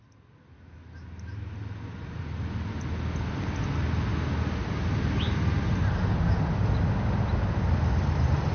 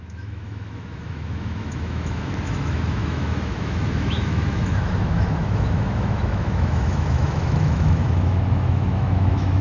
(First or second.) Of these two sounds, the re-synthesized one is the second